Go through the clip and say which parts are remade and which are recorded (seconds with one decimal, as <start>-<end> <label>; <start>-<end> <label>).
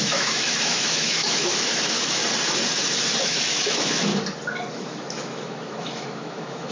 0.0-2.2 remade; 2.2-3.2 recorded; 3.2-4.1 remade; 4.1-4.7 recorded; 4.7-6.7 remade